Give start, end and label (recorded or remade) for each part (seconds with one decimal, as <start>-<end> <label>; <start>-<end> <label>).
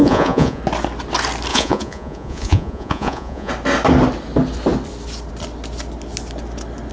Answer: 0.0-0.6 remade; 0.6-1.5 recorded; 1.5-3.5 remade; 3.5-6.9 recorded